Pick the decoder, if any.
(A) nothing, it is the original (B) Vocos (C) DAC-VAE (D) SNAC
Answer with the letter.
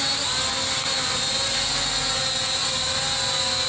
A